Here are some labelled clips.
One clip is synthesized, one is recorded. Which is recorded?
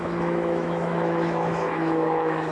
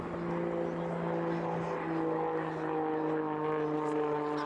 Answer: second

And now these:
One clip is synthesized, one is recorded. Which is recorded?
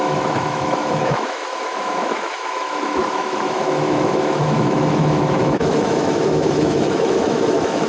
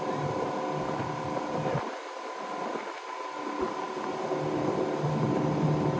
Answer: second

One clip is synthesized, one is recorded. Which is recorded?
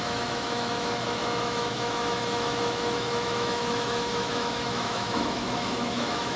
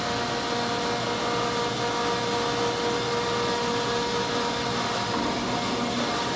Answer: second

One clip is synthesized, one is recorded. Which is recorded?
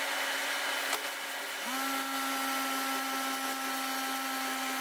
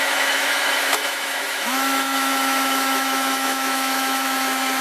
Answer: first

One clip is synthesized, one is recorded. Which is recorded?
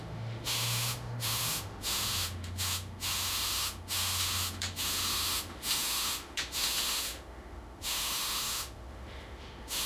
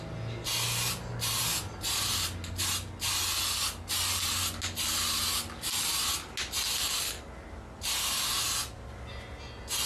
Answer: second